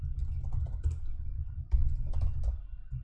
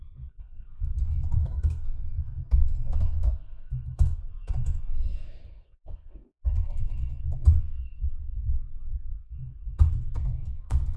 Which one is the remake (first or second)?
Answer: second